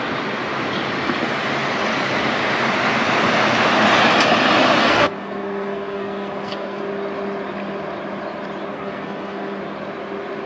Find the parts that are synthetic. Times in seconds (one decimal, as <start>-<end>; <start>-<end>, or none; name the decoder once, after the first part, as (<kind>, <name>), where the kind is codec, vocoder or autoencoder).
4.8-6.8 (codec, SNAC); 8.7-9.6